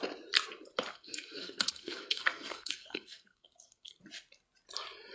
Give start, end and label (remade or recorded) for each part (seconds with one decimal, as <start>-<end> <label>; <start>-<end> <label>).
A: 0.0-0.9 recorded; 0.9-4.0 remade; 4.0-5.1 recorded